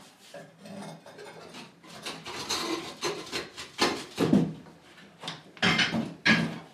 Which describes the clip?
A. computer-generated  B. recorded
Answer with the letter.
B